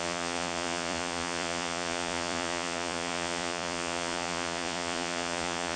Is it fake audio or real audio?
fake